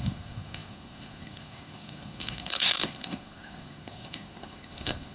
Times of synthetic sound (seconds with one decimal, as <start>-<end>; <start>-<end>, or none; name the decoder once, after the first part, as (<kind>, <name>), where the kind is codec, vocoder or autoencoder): 0.0-5.1 (codec, SNAC)